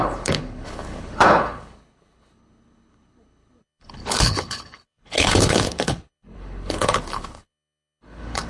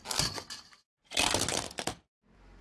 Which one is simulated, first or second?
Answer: first